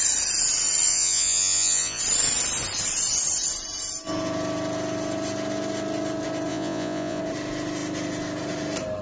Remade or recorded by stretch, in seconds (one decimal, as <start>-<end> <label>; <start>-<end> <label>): 0.0-0.9 recorded; 0.9-2.0 remade; 2.0-6.5 recorded; 6.5-7.2 remade; 7.2-9.0 recorded